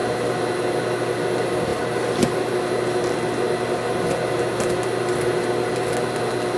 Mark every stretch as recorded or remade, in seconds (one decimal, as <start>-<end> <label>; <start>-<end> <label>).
0.0-6.6 recorded